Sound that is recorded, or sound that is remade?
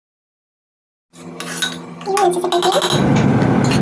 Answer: recorded